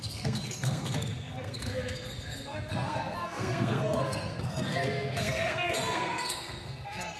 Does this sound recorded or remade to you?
remade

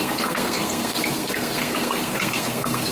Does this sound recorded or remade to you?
remade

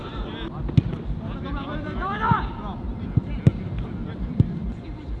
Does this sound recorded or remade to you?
recorded